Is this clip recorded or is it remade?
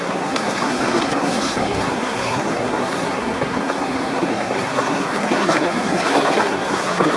remade